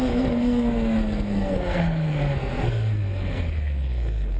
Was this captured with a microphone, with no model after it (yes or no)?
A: no